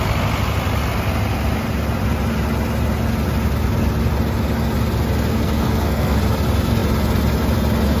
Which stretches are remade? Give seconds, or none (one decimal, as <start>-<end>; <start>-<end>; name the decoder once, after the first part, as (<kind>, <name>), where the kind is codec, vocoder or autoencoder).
5.3-6.2 (codec, SNAC)